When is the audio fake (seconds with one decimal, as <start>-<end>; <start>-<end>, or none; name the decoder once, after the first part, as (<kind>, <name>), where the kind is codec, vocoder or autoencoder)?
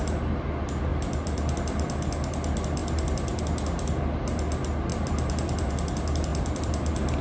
0.9-1.5 (vocoder, BigVGAN v2); 2.8-3.4; 4.9-5.7; 6.3-7.2